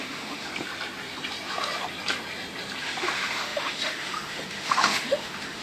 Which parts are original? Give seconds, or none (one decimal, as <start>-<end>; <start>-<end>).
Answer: 0.5-2.8